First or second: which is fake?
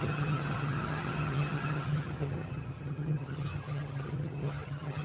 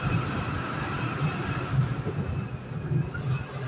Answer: first